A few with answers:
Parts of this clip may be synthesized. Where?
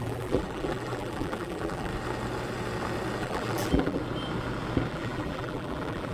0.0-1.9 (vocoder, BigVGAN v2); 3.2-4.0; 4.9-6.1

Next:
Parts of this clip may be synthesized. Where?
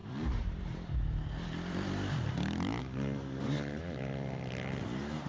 0.0-2.8 (vocoder, BigVGAN v2)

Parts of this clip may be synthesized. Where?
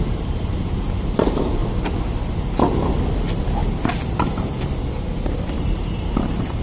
0.0-1.6 (vocoder, BigVGAN v2); 5.6-6.6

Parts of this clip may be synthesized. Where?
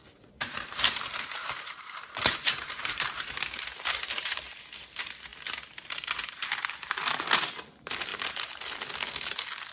0.0-4.4 (vocoder, BigVGAN v2); 8.1-8.7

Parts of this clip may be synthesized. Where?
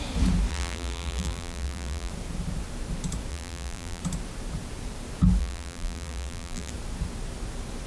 0.5-2.1 (vocoder, BigVGAN v2); 3.3-4.0; 5.4-6.7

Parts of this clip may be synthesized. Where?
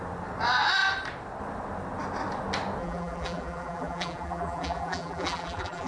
2.8-5.9 (vocoder, BigVGAN v2)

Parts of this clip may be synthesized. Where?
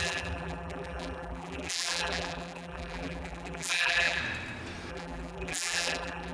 0.0-4.2 (vocoder, BigVGAN v2); 4.9-6.3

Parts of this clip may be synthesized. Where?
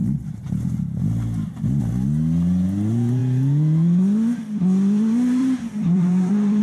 0.0-1.8 (vocoder, BigVGAN v2); 5.4-6.6